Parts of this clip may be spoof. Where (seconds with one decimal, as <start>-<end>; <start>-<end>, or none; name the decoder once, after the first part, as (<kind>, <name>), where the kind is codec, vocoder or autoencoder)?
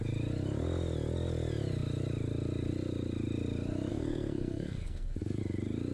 3.9-5.4 (codec, SNAC)